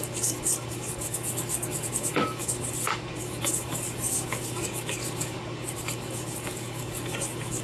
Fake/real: fake